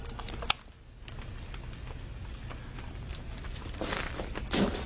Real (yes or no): yes